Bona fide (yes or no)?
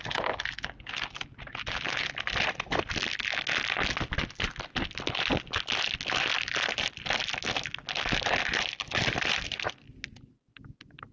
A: yes